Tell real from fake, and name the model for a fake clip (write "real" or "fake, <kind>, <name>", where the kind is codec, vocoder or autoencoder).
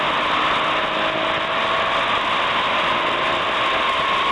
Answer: real